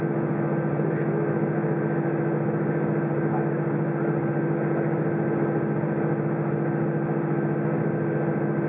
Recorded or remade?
recorded